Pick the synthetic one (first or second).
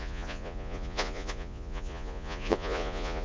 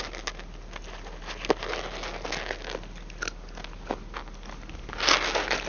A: first